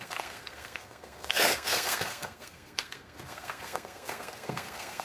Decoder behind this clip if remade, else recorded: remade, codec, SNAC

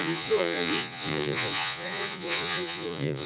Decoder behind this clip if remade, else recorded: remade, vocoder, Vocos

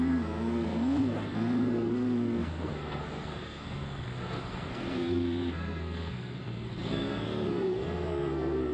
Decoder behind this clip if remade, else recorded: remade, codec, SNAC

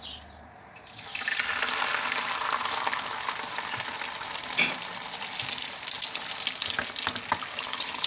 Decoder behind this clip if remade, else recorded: recorded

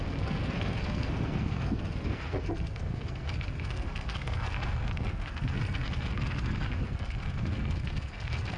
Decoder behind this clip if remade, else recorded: remade, codec, SNAC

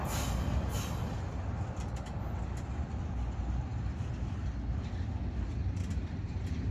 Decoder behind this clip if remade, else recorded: recorded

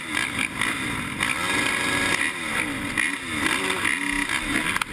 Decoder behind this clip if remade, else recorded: recorded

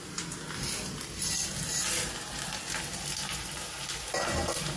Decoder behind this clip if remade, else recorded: recorded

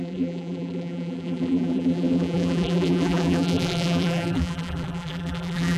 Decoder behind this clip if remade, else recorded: remade, vocoder, BigVGAN v2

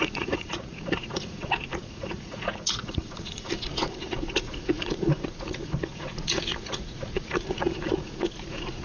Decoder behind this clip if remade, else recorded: remade, vocoder, Vocos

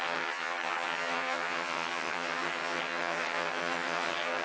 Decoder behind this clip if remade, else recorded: remade, vocoder, HiFi-GAN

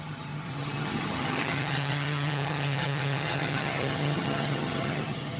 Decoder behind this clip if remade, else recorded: remade, vocoder, HiFi-GAN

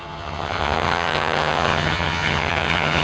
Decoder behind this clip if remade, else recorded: remade, vocoder, HiFi-GAN